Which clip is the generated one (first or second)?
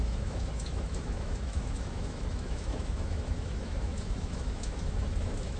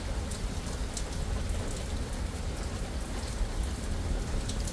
first